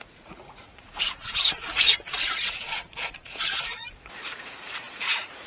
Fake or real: fake